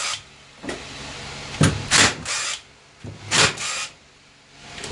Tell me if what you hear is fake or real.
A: real